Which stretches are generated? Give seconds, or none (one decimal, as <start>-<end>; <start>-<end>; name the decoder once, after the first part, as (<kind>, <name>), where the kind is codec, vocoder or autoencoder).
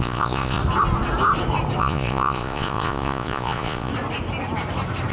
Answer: 0.0-0.6 (vocoder, Vocos); 1.8-3.9